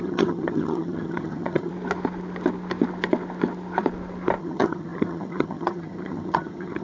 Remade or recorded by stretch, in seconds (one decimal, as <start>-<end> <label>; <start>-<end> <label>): 0.0-1.7 remade; 1.7-4.4 recorded; 4.4-6.8 remade